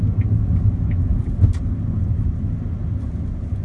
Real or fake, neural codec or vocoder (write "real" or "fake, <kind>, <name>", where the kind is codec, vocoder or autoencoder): real